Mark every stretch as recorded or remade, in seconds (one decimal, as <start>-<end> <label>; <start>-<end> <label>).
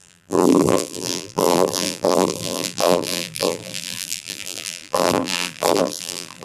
0.0-6.4 remade